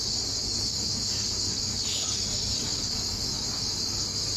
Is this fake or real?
fake